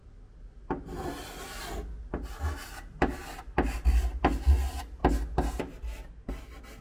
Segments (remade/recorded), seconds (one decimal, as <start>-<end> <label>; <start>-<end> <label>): 0.0-6.8 recorded